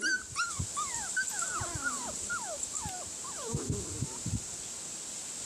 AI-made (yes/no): no